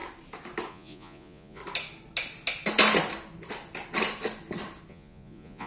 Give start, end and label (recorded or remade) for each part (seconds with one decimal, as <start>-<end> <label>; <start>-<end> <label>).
0.0-0.7 recorded; 0.7-1.6 remade; 1.6-4.9 recorded; 4.9-5.7 remade

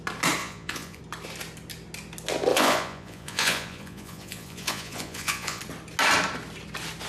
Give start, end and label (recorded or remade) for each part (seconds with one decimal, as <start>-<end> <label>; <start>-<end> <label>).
0.0-0.4 recorded; 0.4-1.0 remade; 1.0-2.5 recorded; 2.5-5.6 remade; 5.6-7.1 recorded

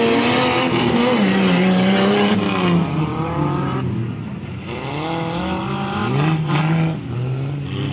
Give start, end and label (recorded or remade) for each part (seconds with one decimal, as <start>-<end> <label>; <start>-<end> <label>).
0.0-7.9 recorded